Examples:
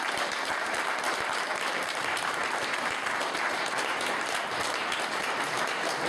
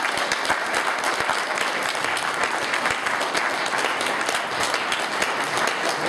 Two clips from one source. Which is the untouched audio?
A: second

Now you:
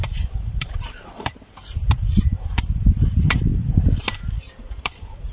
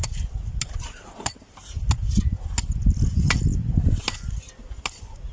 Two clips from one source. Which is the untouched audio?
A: second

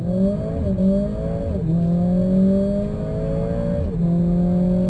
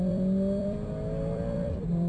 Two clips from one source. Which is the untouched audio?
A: first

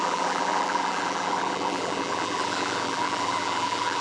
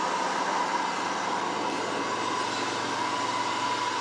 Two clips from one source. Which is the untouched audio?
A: second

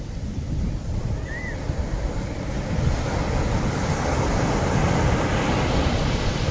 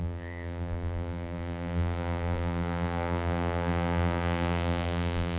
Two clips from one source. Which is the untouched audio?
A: first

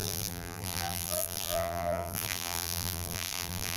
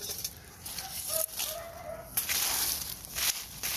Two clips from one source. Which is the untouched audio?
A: second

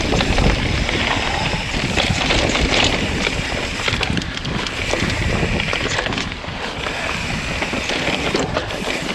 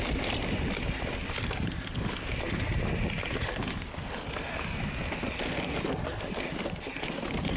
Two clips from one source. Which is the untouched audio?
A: second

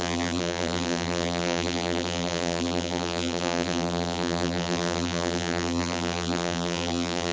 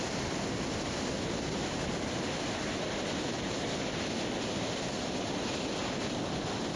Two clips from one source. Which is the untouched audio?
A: second